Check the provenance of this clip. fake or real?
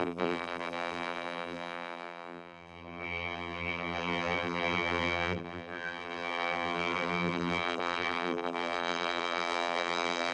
fake